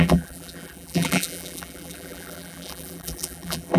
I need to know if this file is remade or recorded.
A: remade